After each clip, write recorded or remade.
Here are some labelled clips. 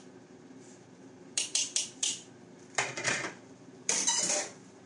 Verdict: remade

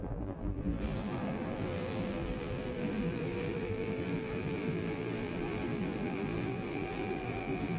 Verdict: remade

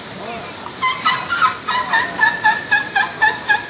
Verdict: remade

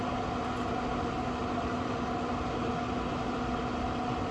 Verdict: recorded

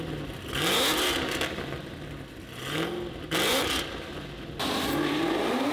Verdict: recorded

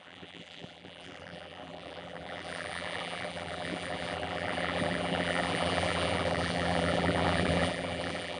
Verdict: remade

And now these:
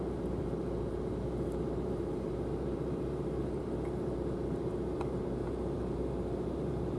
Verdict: remade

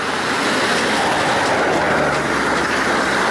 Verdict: recorded